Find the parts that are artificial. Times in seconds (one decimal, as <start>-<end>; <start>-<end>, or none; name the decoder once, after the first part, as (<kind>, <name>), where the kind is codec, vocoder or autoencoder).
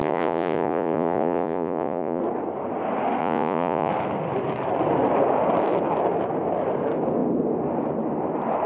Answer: 0.0-2.2 (vocoder, Vocos); 3.2-3.9